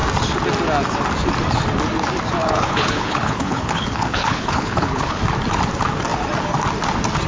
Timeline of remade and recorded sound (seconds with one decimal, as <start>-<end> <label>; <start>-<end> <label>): 0.0-2.4 recorded; 2.4-5.2 remade; 5.2-7.3 recorded